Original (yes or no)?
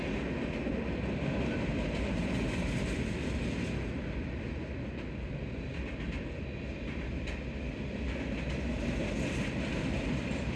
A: yes